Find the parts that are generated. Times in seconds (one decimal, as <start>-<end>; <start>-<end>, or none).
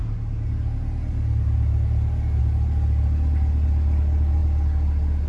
none